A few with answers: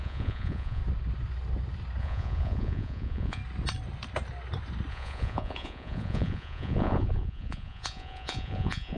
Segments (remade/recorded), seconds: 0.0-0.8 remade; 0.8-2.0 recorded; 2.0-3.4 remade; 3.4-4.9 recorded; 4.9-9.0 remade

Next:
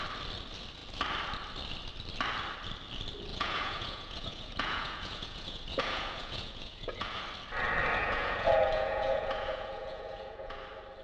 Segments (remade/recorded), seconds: 0.0-3.3 recorded; 3.3-7.2 remade; 7.2-8.0 recorded; 8.0-10.6 remade; 10.6-11.0 recorded